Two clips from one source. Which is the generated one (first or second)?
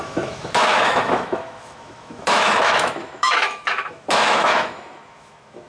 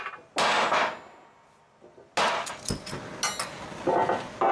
first